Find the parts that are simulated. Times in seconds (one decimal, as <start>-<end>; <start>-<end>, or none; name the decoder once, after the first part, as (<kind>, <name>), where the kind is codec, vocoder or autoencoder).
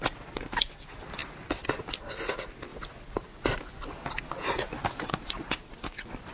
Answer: none